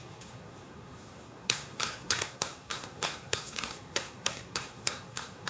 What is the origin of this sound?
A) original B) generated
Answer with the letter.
B